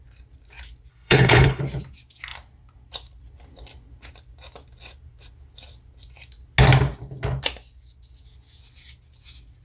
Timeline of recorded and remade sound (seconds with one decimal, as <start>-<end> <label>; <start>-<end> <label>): 0.0-0.9 recorded; 0.9-1.6 remade; 1.6-9.6 recorded